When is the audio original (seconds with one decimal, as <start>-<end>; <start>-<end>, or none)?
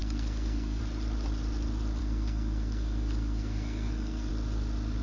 0.8-2.0; 4.3-5.0